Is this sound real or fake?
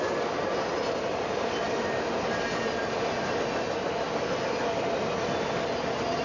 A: real